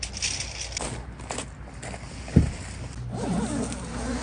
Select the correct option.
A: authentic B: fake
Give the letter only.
A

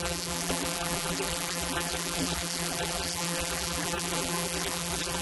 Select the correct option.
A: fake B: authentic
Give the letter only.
A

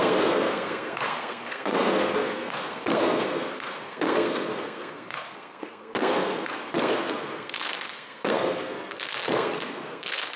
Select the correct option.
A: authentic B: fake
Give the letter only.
B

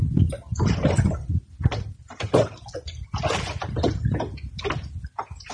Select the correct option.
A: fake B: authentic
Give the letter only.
B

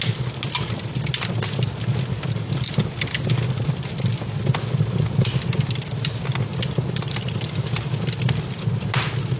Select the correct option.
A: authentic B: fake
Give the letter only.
A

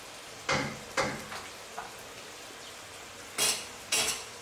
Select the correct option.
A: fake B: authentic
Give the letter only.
B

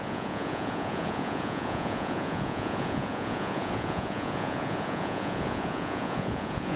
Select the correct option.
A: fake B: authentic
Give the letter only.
A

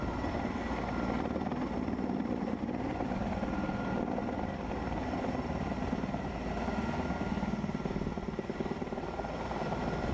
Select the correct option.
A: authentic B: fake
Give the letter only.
A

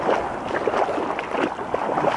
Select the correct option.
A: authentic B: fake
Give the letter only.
A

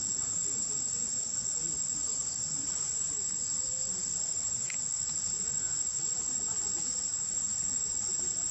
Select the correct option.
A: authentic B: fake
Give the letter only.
A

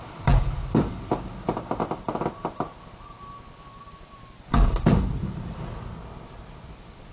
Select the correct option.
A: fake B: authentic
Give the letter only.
B